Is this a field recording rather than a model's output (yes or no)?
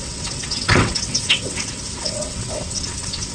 no